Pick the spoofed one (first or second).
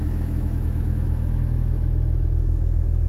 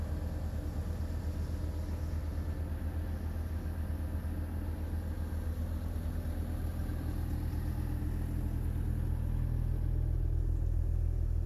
first